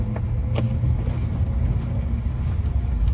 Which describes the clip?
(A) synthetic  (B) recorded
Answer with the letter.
B